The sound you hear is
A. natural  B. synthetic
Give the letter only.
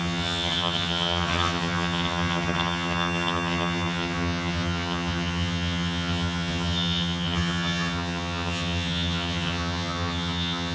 B